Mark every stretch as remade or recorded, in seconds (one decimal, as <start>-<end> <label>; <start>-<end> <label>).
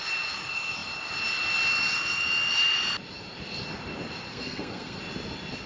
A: 0.0-4.3 recorded; 4.3-5.0 remade; 5.0-5.7 recorded